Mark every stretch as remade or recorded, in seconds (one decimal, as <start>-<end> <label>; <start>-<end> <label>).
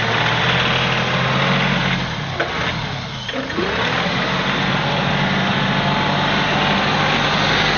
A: 0.0-7.8 recorded